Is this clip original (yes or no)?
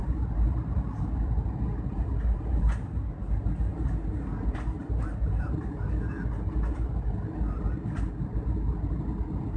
yes